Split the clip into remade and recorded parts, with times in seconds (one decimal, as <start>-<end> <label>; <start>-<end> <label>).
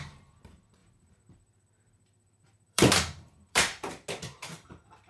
0.0-0.8 recorded; 0.8-3.9 remade; 3.9-4.4 recorded; 4.4-5.1 remade